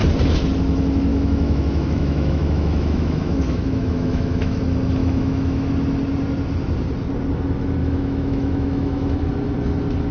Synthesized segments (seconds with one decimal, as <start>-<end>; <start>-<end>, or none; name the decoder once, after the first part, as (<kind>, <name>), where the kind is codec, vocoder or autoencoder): 1.1-4.6 (autoencoder, DAC-VAE); 5.0-5.7; 7.8-9.2